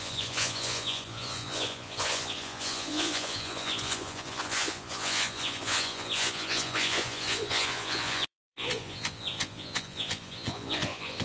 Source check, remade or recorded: remade